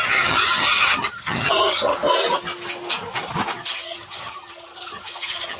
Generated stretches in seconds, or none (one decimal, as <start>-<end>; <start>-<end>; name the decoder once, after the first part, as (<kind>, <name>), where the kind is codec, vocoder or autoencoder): 0.0-1.9 (vocoder, HiFi-GAN); 3.7-5.6

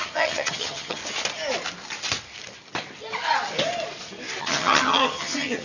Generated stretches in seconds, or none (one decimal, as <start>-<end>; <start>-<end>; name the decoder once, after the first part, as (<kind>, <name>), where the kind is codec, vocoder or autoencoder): 0.0-1.0 (vocoder, HiFi-GAN); 4.4-5.6